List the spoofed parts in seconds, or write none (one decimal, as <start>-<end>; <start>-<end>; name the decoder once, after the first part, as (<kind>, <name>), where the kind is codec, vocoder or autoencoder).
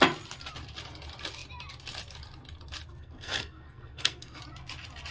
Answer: 3.0-4.4 (codec, SNAC)